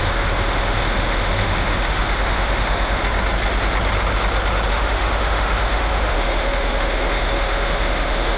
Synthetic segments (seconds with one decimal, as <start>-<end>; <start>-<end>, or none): 0.0-3.0; 4.7-8.4